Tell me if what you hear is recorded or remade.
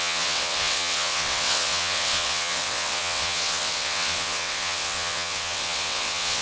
remade